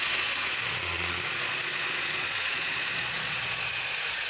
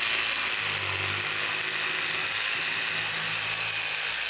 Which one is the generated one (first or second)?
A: first